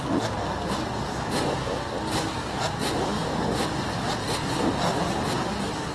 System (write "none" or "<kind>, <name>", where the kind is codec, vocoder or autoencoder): none